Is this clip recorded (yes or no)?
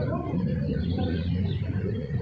no